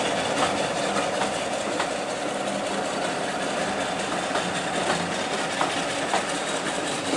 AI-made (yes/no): no